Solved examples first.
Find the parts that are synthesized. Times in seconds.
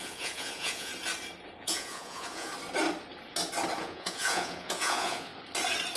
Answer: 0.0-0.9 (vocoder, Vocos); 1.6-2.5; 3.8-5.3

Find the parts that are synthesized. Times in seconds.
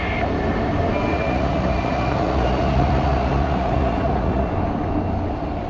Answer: 1.1-4.5 (vocoder, Vocos)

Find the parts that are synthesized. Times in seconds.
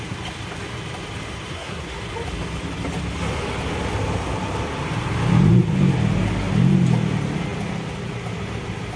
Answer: 1.5-2.0 (codec, SNAC)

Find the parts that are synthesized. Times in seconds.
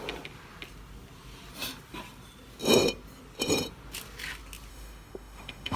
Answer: 4.7-5.8 (autoencoder, DAC-VAE)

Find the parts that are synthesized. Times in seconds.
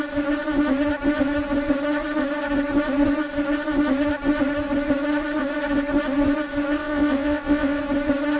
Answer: 6.8-7.8 (vocoder, WaveNeXt)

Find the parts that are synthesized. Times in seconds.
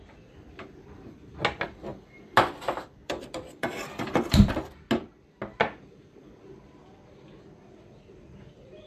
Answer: 1.9-4.5 (vocoder, BigVGAN v2)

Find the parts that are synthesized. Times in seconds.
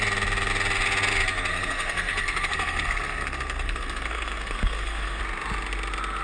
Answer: 1.5-5.2 (codec, SNAC)